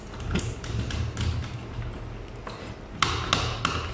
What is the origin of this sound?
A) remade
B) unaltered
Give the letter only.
B